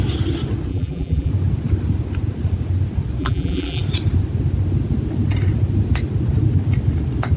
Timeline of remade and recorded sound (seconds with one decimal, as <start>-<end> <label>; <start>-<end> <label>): 0.0-0.7 recorded; 0.7-1.3 remade; 1.3-3.2 recorded; 3.2-3.8 remade; 3.8-7.4 recorded